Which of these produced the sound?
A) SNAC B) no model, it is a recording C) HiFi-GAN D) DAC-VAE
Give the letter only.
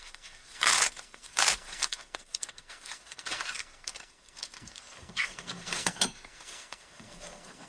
A